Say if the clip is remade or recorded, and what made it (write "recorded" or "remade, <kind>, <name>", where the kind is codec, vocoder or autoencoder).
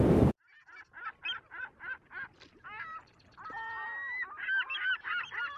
recorded